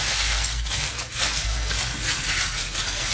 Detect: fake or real fake